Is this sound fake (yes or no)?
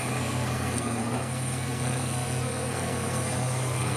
yes